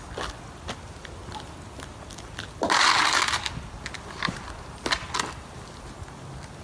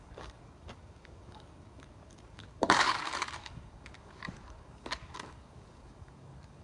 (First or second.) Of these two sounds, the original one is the first